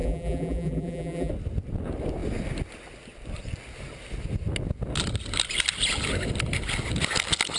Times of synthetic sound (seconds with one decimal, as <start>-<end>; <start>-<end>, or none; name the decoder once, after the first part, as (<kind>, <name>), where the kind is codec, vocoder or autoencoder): 0.0-1.3 (vocoder, BigVGAN v2)